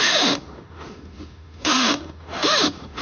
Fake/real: fake